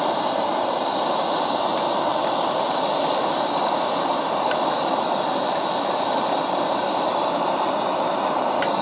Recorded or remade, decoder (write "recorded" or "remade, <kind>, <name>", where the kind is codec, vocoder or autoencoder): recorded